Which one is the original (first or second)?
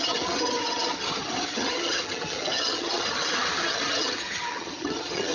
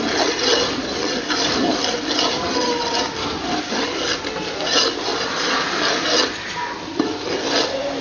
second